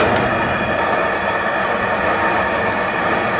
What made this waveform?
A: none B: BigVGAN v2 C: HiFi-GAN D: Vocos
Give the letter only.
A